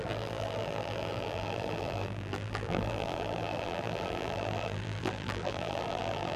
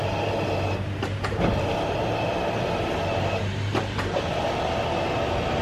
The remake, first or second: first